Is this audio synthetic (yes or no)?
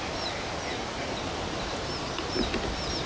no